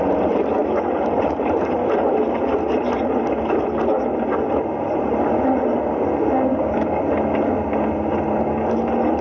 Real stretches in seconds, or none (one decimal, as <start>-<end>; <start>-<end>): 0.0-6.5; 7.0-9.2